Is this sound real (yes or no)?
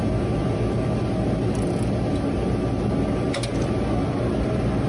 yes